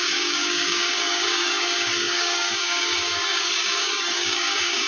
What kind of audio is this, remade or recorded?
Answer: remade